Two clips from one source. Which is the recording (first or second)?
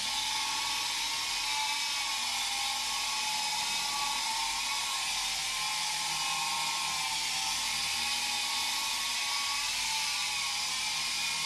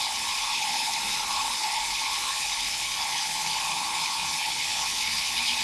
first